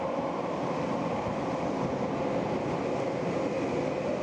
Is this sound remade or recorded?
recorded